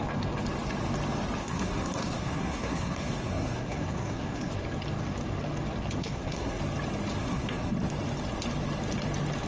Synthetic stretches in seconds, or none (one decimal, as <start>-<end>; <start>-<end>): 1.4-4.5; 6.0-6.6; 7.2-7.7